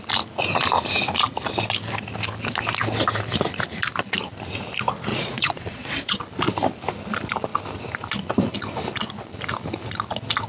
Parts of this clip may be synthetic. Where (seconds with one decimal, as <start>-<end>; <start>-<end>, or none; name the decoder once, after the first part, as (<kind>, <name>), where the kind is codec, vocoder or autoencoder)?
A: 5.1-6.2 (vocoder, Vocos)